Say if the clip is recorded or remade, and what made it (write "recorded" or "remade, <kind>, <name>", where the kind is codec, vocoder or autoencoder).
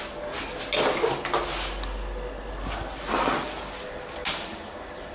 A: recorded